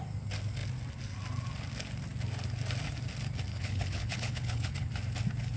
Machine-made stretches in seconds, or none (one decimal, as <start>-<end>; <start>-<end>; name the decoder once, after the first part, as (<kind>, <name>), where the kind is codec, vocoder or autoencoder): 3.5-4.9 (codec, HILCodec)